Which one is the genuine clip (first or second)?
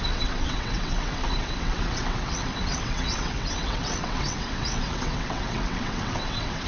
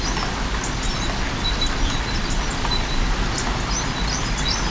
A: second